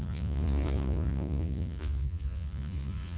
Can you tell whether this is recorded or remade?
remade